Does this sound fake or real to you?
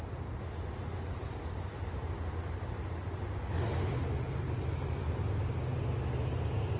real